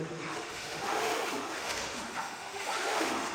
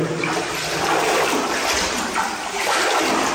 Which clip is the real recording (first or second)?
second